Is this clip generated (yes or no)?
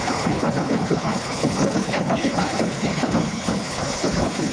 yes